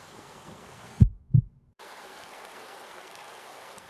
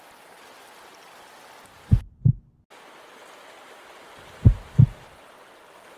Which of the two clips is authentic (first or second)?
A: second